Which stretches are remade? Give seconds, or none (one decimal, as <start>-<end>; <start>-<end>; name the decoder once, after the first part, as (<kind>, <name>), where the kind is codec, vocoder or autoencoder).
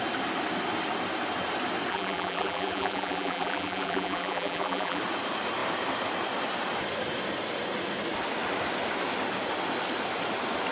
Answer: 1.9-5.0 (vocoder, BigVGAN v2)